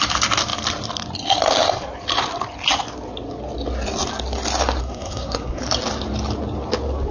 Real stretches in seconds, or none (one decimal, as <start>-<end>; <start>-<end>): 0.0-4.8; 5.6-7.1